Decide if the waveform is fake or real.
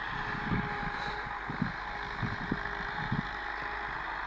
real